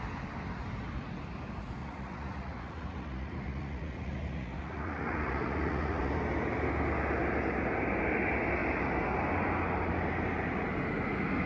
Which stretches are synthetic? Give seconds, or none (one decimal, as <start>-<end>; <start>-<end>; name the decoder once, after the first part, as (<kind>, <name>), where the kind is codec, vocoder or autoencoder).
1.8-6.1 (vocoder, Vocos)